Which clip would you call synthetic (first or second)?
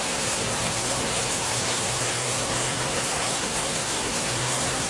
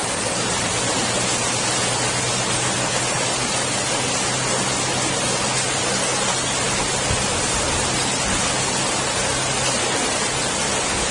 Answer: first